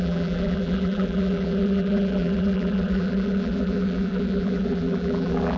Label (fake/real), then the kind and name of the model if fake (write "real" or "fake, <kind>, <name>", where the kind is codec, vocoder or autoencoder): fake, vocoder, BigVGAN v2